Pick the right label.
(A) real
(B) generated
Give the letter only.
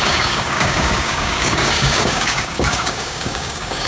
B